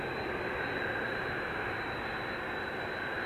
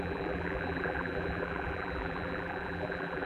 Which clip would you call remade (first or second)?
second